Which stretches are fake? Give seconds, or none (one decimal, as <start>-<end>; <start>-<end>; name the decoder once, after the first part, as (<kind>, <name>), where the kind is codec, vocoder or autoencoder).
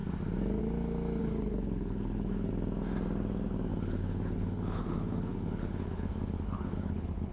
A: 1.2-2.5 (codec, HILCodec); 3.7-7.3